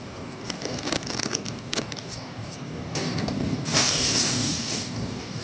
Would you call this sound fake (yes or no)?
yes